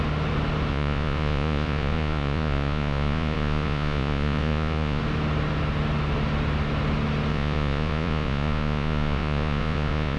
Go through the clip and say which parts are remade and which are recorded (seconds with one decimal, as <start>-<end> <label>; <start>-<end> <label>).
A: 0.0-0.7 recorded; 0.7-5.0 remade; 5.0-7.3 recorded; 7.3-10.2 remade